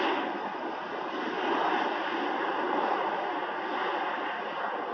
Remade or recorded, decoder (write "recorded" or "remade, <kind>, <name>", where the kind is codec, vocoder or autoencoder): recorded